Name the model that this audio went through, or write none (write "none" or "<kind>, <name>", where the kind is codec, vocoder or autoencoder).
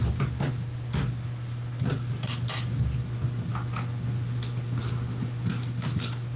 none